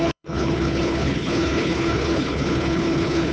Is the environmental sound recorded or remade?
remade